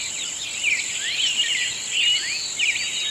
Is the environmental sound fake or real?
real